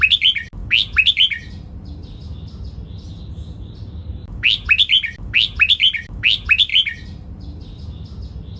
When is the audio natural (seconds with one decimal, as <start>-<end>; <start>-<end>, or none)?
0.0-8.6